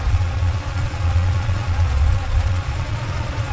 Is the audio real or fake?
fake